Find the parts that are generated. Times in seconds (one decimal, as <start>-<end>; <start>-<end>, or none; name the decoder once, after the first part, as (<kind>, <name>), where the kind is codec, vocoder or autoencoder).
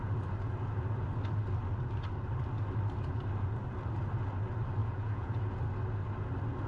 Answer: 4.8-5.4 (vocoder, Vocos)